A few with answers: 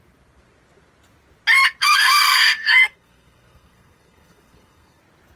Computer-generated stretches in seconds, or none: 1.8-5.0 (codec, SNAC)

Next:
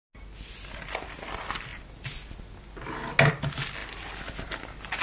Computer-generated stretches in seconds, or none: none